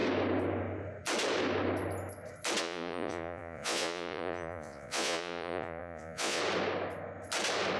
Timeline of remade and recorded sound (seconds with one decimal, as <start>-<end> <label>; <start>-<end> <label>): 0.0-2.6 recorded; 2.6-6.4 remade; 6.4-7.8 recorded

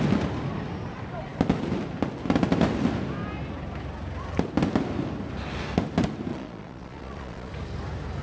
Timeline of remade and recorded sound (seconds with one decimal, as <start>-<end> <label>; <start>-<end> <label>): 0.0-6.3 recorded; 6.3-7.5 remade; 7.5-8.2 recorded

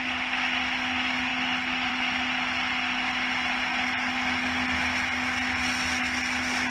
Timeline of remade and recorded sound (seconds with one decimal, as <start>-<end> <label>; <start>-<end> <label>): 0.0-6.7 recorded

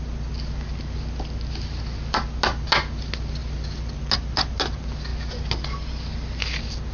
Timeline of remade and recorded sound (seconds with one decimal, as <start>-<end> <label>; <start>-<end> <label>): 0.0-6.9 recorded